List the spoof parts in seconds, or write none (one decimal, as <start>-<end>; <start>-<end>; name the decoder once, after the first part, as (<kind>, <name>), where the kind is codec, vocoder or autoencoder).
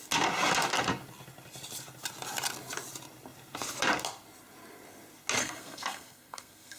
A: 5.4-6.8 (codec, SNAC)